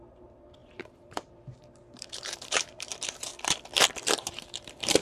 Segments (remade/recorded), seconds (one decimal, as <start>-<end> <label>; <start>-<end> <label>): 0.0-3.3 remade; 3.3-4.1 recorded; 4.1-5.0 remade